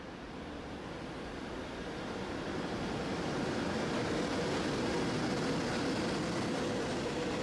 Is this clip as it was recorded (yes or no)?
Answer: yes